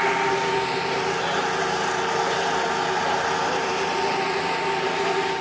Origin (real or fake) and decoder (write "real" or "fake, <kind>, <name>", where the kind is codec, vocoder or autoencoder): real